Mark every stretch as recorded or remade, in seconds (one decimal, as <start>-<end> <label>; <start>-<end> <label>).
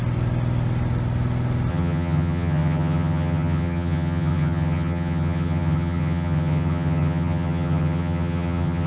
0.0-1.7 recorded; 1.7-8.9 remade